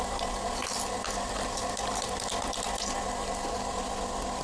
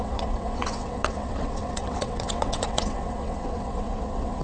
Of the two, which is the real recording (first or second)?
first